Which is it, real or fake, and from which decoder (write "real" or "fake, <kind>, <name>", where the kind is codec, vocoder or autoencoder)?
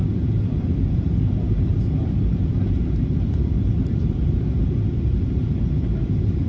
fake, vocoder, BigVGAN v2